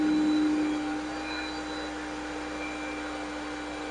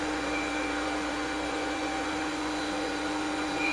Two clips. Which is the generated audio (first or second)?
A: second